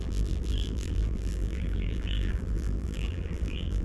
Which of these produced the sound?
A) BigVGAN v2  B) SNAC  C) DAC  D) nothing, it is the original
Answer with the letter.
A